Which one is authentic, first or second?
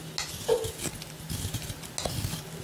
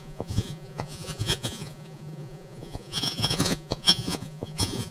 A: first